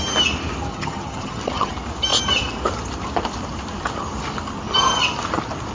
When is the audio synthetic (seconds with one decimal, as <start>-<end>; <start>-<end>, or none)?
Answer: 0.7-1.7